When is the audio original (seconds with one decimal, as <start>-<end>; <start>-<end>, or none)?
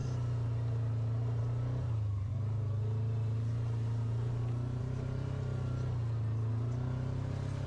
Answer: 0.0-7.7